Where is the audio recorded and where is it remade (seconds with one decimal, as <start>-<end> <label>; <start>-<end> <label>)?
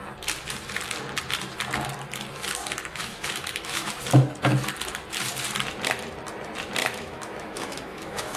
0.0-2.9 recorded; 2.9-3.9 remade; 3.9-6.8 recorded; 6.8-8.4 remade